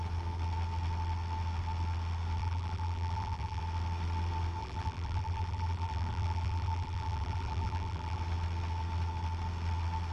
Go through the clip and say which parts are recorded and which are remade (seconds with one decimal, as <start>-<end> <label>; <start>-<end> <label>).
0.0-2.4 recorded; 2.4-3.6 remade; 3.6-4.6 recorded; 4.6-8.2 remade; 8.2-10.1 recorded